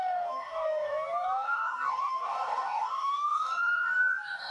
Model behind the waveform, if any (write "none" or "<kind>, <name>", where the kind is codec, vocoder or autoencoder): codec, DAC